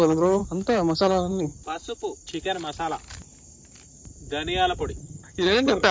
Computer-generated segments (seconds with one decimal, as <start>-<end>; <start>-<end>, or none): 0.0-0.4; 1.0-1.5; 5.0-5.9